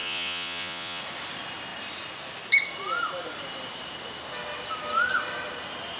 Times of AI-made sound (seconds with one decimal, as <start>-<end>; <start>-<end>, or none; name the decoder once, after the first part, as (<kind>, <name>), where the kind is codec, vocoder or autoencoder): 0.0-1.0 (vocoder, Vocos)